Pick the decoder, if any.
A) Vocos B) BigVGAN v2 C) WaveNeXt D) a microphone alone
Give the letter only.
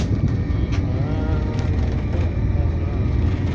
D